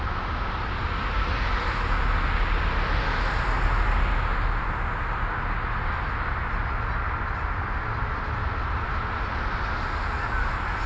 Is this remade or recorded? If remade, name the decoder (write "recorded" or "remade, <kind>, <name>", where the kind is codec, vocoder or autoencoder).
recorded